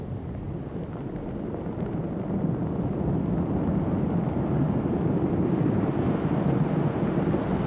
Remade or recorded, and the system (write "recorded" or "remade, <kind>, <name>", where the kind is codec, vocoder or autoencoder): recorded